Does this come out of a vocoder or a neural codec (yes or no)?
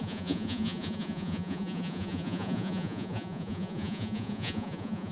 yes